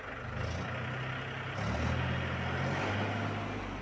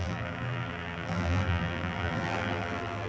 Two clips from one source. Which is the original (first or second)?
first